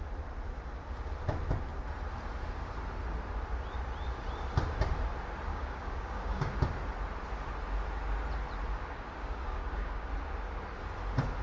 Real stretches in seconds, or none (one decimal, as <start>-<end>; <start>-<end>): 0.0-5.5; 6.5-8.7; 10.1-11.4